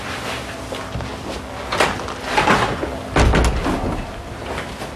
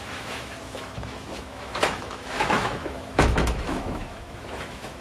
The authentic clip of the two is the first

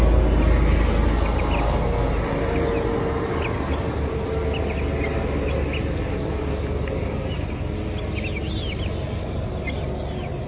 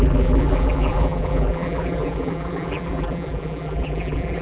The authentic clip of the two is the first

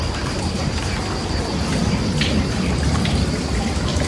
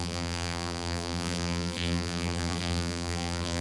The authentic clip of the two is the first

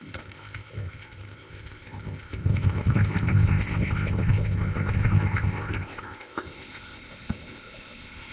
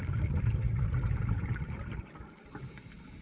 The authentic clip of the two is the second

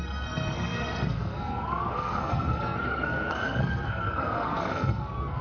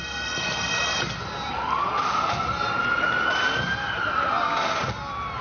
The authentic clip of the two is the second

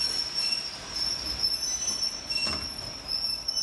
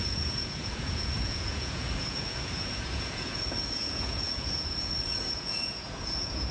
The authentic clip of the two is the first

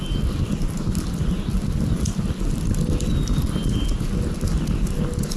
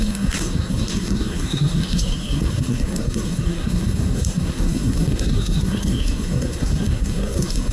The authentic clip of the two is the first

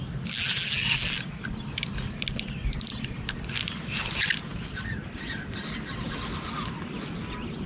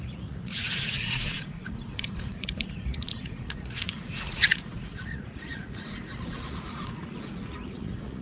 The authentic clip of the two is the first